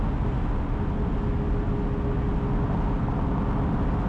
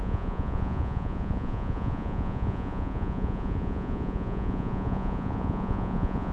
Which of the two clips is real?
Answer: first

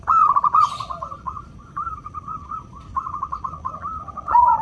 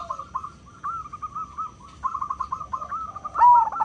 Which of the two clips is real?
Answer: second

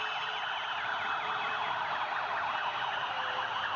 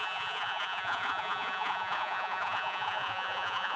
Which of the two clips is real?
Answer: first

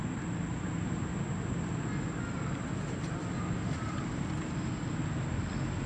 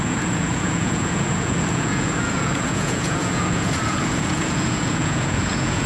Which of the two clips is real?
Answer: first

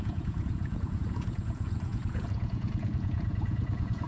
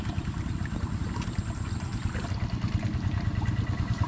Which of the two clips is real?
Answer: second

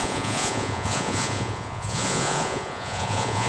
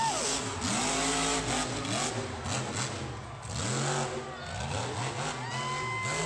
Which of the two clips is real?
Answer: second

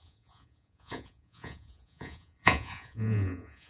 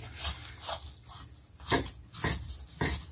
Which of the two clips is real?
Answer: second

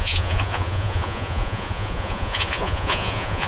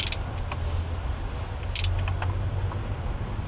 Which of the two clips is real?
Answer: second